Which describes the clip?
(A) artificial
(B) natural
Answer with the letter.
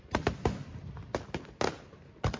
B